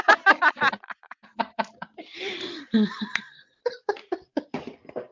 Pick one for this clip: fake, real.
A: fake